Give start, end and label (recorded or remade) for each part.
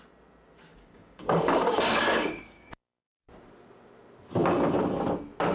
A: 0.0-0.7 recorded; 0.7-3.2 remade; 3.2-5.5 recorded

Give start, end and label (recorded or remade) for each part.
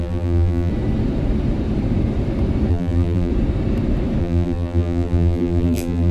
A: 0.0-0.7 remade; 0.7-2.7 recorded; 2.7-3.3 remade; 3.3-4.2 recorded; 4.2-6.1 remade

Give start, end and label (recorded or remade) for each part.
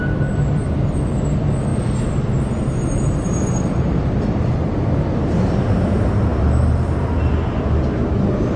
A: 0.0-8.6 recorded